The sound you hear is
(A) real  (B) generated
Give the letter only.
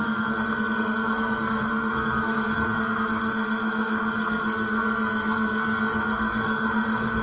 B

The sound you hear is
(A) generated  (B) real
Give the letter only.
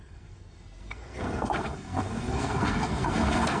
A